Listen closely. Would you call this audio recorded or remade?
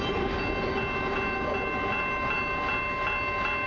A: recorded